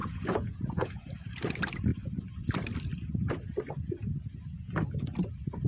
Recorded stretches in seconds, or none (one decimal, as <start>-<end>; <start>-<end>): 1.1-5.7

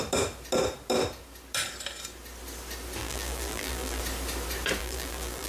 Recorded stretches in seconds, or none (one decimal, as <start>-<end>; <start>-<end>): 0.0-3.0; 4.0-4.8

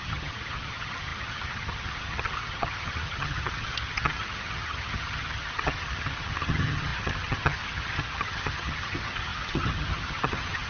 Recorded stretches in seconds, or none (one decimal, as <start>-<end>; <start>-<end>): none

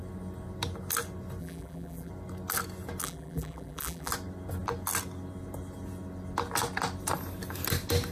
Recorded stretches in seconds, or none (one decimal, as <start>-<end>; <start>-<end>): 0.0-1.4; 2.1-3.0; 4.1-8.1

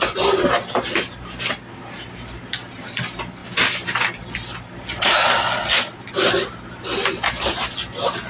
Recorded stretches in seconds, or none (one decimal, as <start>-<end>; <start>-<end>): 0.0-8.3